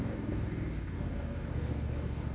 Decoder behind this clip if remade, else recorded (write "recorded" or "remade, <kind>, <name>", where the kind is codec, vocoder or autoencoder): remade, codec, DAC